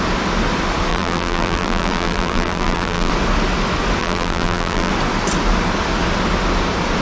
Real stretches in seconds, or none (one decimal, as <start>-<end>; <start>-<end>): 0.0-0.9; 3.1-4.0; 4.9-7.0